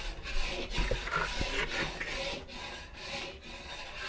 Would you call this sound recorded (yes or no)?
yes